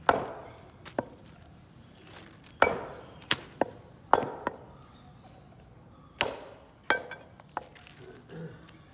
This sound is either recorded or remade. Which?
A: recorded